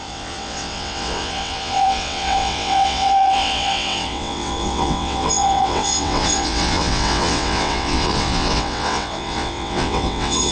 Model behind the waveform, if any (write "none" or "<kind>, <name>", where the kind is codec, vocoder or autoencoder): vocoder, WaveNeXt